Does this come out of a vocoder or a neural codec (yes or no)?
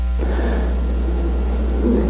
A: no